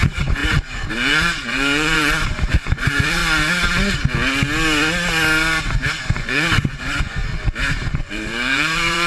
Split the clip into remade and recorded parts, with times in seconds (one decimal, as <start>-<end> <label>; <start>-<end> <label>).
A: 0.0-3.2 remade; 3.2-6.0 recorded; 6.0-7.2 remade; 7.2-7.9 recorded; 7.9-9.1 remade